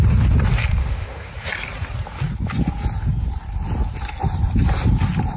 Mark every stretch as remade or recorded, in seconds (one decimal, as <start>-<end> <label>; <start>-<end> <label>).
0.0-0.8 recorded; 0.8-1.3 remade; 1.3-5.4 recorded